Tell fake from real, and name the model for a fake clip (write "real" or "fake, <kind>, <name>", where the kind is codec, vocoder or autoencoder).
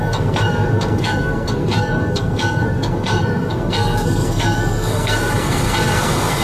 fake, codec, SNAC